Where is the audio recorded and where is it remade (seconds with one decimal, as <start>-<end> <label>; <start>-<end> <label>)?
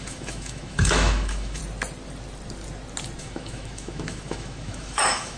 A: 0.0-1.6 remade; 1.6-3.2 recorded; 3.2-5.4 remade